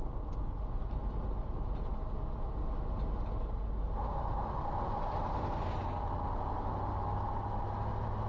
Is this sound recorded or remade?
recorded